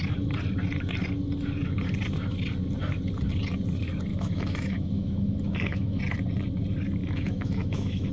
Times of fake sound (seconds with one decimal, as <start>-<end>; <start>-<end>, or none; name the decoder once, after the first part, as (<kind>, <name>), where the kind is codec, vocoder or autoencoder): 4.1-6.0 (autoencoder, DAC-VAE); 7.0-8.1

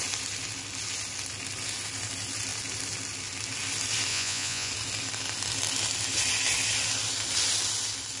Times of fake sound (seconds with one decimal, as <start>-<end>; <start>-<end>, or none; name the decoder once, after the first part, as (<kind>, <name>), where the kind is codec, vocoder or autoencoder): 4.1-4.7 (vocoder, Vocos)

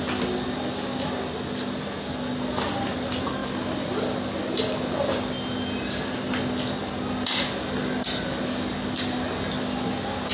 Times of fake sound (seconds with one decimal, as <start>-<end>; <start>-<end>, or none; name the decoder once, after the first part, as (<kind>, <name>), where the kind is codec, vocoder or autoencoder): none

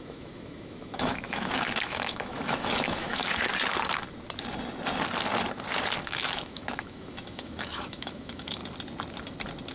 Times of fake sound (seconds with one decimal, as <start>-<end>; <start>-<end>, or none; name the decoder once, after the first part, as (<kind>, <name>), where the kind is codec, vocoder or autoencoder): 0.0-3.5 (autoencoder, DAC-VAE); 6.0-8.6

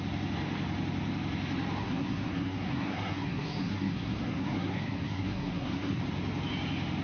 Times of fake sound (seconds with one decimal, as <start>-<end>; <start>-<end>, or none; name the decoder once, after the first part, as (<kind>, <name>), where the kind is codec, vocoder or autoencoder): 1.8-6.0 (codec, SNAC)

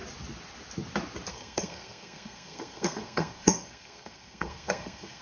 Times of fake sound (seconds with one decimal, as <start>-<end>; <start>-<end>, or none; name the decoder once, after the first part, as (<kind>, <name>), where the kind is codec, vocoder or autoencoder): 1.3-5.2 (codec, SNAC)